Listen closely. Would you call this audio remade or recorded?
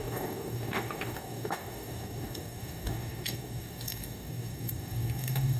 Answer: remade